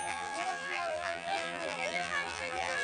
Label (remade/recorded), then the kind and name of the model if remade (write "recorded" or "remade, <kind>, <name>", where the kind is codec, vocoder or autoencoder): remade, vocoder, BigVGAN v2